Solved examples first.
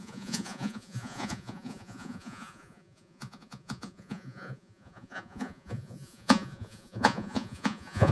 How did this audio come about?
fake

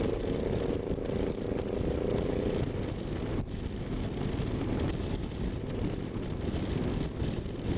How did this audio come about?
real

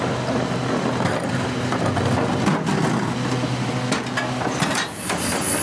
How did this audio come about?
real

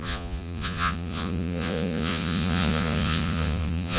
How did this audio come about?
fake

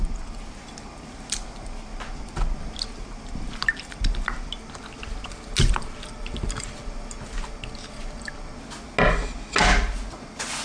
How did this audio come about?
real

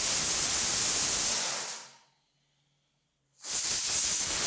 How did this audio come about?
real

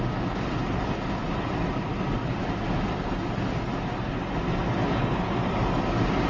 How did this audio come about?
real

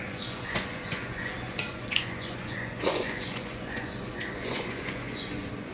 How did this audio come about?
fake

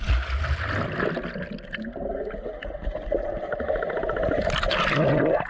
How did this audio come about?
real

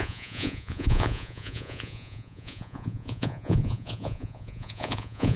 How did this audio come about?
fake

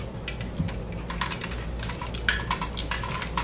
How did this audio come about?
real